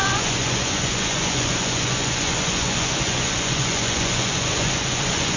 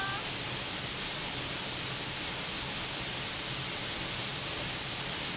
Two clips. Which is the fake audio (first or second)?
first